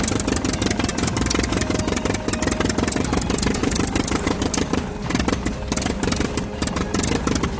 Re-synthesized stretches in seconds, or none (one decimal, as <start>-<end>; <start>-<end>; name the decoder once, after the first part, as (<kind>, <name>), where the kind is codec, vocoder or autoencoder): 3.6-4.4 (vocoder, BigVGAN v2)